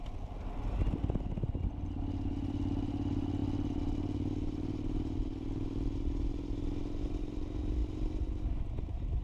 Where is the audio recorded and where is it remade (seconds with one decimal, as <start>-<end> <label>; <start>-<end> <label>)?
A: 0.0-9.2 recorded